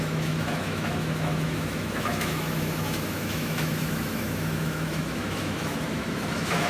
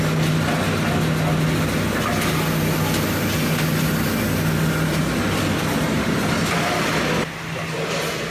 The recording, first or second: second